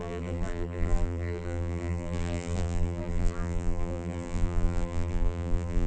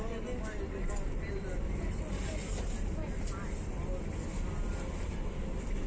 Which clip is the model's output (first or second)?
first